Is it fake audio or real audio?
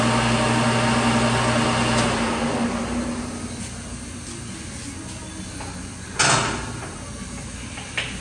real